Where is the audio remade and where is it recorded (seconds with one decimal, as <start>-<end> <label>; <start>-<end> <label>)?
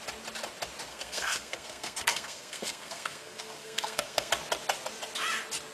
0.0-0.9 recorded; 0.9-4.3 remade; 4.3-5.7 recorded